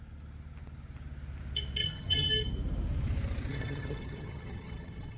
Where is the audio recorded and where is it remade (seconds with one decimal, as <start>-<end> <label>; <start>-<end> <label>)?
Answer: 0.0-1.8 recorded; 1.8-2.3 remade; 2.3-3.5 recorded; 3.5-5.2 remade

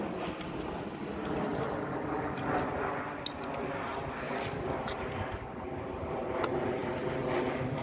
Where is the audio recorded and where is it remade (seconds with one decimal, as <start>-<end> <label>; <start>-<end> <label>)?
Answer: 0.0-1.5 remade; 1.5-5.5 recorded; 5.5-6.8 remade; 6.8-7.8 recorded

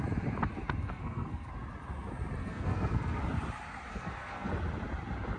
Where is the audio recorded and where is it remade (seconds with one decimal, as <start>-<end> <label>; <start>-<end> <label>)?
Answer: 0.0-0.8 recorded; 0.8-1.5 remade; 1.5-2.4 recorded; 2.4-3.2 remade; 3.2-3.9 recorded; 3.9-4.5 remade; 4.5-5.4 recorded

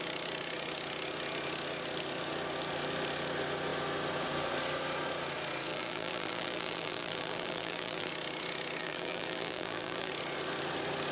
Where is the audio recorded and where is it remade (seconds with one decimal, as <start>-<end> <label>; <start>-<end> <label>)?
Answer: 0.0-5.7 recorded; 5.7-8.1 remade; 8.1-8.8 recorded; 8.8-10.1 remade; 10.1-11.1 recorded